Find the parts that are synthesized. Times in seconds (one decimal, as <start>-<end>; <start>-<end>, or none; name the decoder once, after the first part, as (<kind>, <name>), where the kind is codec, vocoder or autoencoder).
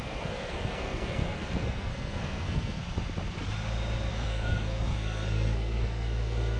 0.0-2.8 (codec, SNAC); 4.1-6.6